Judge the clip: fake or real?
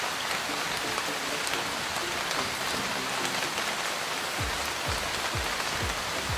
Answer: real